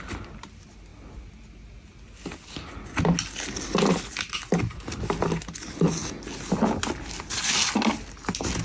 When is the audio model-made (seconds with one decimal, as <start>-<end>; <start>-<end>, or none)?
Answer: none